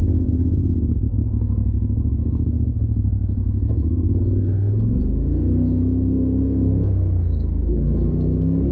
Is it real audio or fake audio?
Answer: fake